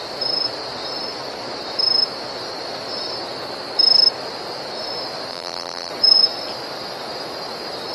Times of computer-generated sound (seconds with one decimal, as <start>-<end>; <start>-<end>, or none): 5.3-5.9